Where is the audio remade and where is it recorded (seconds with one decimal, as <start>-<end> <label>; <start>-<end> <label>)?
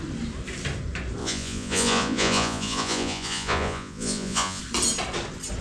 0.0-1.2 recorded; 1.2-4.6 remade; 4.6-5.6 recorded